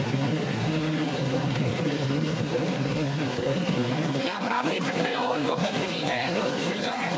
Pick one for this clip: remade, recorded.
remade